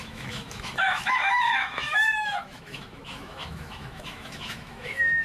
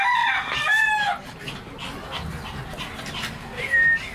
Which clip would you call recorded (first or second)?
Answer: second